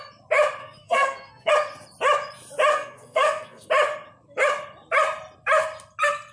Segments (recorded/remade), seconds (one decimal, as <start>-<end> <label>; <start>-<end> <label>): 0.0-0.6 recorded; 0.6-1.5 remade; 1.5-2.7 recorded; 2.7-3.7 remade; 3.7-6.3 recorded